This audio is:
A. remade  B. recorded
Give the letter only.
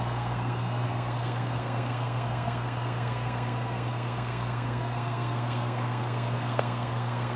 A